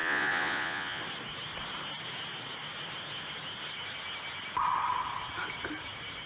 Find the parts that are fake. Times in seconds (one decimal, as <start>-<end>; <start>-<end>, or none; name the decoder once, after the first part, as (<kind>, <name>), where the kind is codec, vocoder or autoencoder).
0.0-1.0 (vocoder, Vocos)